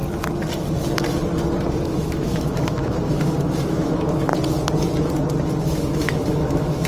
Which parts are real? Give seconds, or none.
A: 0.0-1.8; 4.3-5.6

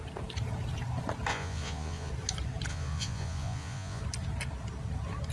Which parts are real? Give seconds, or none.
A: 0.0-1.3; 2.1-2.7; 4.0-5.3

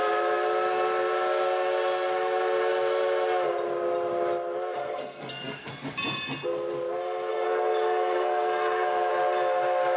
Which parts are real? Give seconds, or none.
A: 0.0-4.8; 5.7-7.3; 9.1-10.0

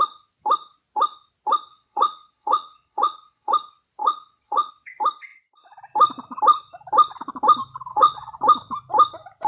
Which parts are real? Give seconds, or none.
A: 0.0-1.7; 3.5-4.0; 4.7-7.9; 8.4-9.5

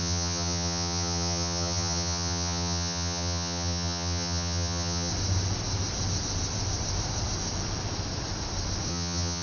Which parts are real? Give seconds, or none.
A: 5.1-8.9